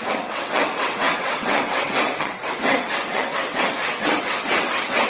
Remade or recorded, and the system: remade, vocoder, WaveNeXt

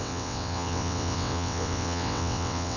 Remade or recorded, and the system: remade, vocoder, WaveNeXt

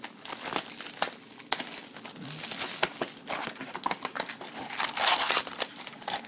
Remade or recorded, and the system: recorded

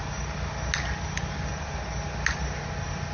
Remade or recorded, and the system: recorded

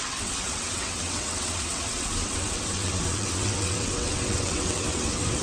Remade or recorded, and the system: remade, vocoder, WaveNeXt